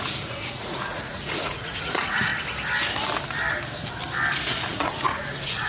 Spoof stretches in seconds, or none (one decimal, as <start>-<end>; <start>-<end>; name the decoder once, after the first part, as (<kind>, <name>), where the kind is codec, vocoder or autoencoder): 0.0-2.3 (vocoder, Vocos); 4.7-5.7

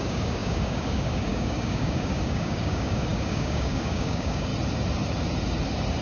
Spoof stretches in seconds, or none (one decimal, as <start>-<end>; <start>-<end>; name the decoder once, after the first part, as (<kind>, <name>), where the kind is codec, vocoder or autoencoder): 0.0-4.5 (codec, DAC)

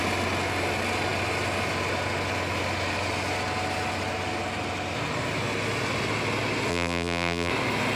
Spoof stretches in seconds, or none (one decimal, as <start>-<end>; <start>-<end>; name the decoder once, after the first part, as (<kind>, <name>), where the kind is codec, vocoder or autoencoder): 6.7-7.5 (vocoder, BigVGAN v2)

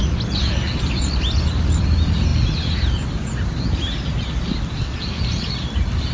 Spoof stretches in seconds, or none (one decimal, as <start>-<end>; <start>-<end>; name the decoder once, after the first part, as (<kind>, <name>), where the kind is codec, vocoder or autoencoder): none

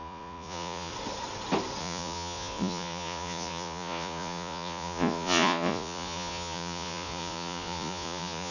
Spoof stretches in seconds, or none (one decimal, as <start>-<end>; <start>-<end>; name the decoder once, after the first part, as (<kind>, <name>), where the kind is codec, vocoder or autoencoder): 0.0-0.9 (vocoder, Vocos); 1.8-8.5